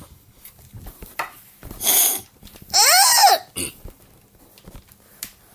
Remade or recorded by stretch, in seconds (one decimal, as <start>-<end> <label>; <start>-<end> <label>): 0.0-5.5 recorded